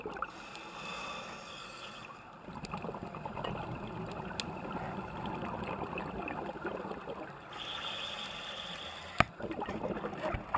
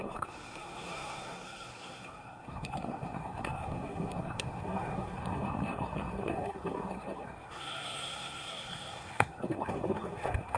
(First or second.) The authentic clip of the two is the first